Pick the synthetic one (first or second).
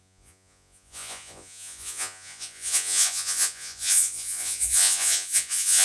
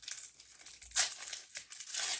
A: first